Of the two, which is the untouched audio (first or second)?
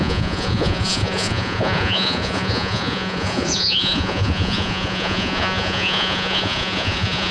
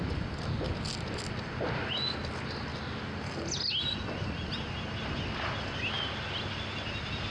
second